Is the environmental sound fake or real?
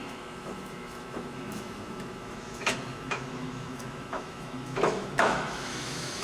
fake